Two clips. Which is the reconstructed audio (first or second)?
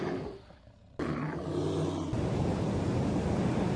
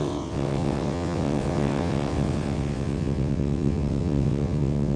second